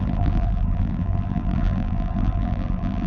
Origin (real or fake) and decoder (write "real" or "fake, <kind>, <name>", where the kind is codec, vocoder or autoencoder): fake, vocoder, BigVGAN v2